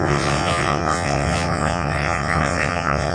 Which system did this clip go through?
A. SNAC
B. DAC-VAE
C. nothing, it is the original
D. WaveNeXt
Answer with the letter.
D